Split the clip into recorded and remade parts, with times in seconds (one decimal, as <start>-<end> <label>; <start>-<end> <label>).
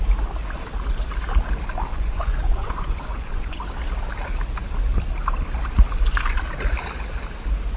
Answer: 0.0-1.9 recorded; 1.9-3.6 remade; 3.6-7.8 recorded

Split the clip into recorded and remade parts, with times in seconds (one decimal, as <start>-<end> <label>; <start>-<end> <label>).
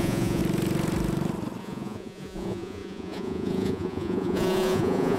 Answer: 0.0-0.4 remade; 0.4-1.6 recorded; 1.6-5.2 remade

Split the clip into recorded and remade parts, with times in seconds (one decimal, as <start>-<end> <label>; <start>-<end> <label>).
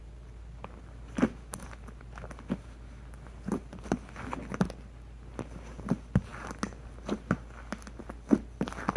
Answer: 0.0-9.0 recorded